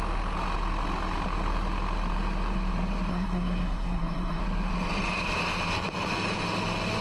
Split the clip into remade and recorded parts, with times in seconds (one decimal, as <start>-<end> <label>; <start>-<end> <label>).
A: 0.0-3.1 recorded; 3.1-4.4 remade; 4.4-7.0 recorded